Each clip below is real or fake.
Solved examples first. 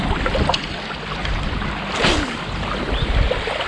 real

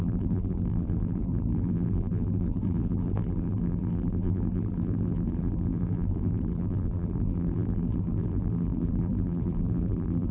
fake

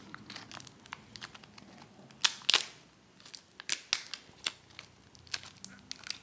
real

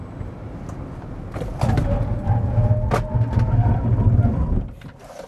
real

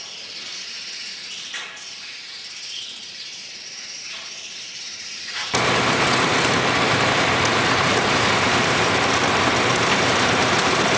fake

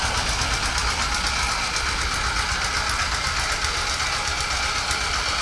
real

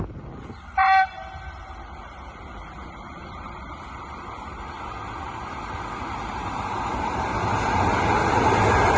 real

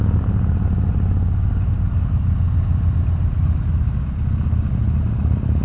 real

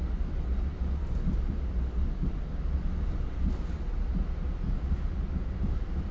real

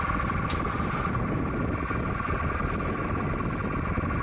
real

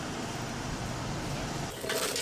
real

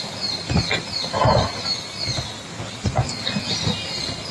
real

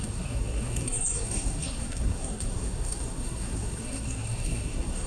fake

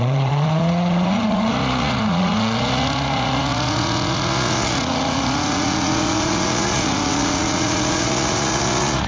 fake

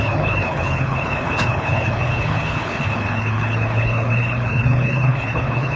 fake